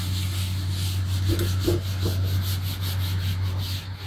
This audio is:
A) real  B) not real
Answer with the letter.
A